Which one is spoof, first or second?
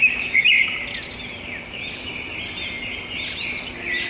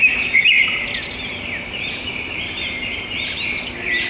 second